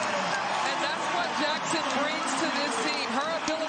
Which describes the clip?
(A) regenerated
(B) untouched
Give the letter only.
B